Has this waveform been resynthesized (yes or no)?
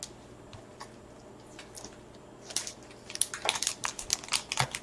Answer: no